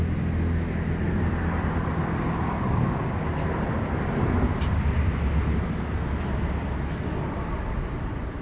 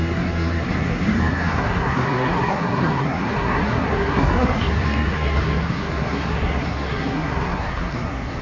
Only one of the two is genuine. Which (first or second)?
first